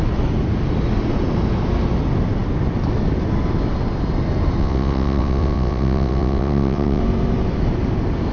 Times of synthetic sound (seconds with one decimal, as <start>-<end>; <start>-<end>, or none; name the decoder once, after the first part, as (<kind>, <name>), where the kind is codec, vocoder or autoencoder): 4.6-7.0 (vocoder, WaveNeXt)